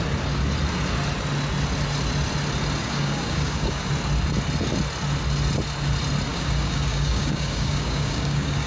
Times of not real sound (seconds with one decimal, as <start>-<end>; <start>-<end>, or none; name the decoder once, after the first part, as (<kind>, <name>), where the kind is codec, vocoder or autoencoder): 2.8-3.9 (codec, DAC); 6.3-8.7